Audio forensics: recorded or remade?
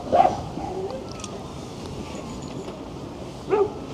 recorded